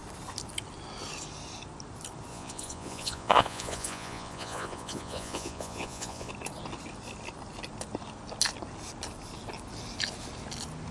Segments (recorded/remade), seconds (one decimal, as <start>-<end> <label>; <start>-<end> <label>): 0.0-2.3 recorded; 2.3-6.3 remade; 6.3-10.9 recorded